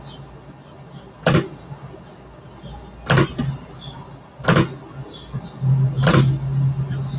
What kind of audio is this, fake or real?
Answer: real